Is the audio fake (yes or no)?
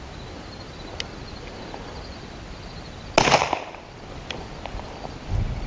no